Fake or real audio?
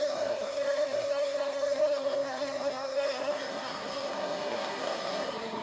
fake